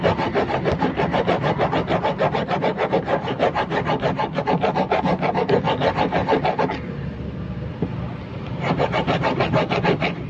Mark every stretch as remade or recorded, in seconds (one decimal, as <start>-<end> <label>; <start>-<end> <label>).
0.0-10.3 recorded